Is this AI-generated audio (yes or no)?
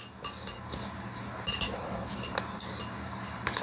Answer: no